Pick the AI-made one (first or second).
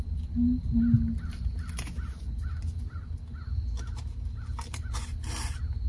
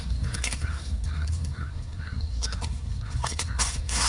second